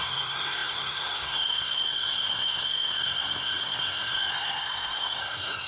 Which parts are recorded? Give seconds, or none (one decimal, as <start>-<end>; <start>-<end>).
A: none